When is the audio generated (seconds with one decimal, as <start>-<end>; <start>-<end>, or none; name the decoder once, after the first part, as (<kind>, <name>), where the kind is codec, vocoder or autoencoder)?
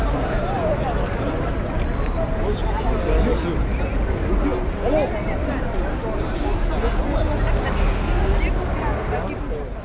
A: none